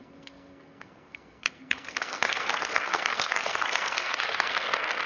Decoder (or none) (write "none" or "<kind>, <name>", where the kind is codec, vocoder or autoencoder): codec, SNAC